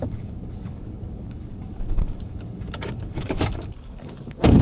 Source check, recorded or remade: remade